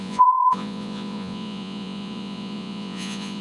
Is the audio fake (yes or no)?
yes